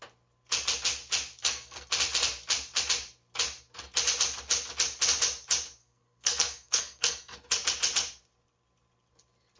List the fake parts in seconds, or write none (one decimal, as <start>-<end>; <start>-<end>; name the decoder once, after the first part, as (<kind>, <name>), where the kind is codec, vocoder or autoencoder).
1.4-1.9 (codec, SNAC); 5.8-7.5